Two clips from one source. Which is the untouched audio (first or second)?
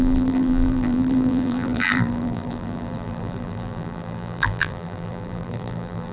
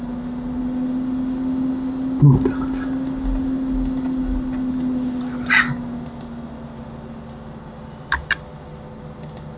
second